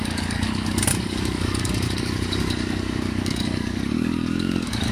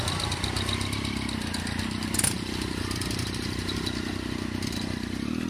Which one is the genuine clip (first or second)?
second